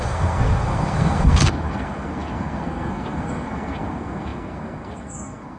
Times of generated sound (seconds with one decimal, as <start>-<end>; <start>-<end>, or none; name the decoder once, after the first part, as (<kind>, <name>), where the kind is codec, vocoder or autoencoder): 0.0-5.6 (codec, SNAC)